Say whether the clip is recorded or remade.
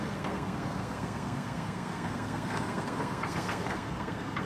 remade